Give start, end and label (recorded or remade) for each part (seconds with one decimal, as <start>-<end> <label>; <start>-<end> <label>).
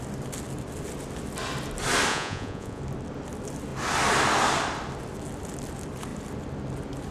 0.0-2.1 recorded; 2.1-2.8 remade; 2.8-7.1 recorded